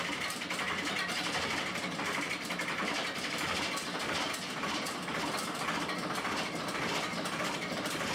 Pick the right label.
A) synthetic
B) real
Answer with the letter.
B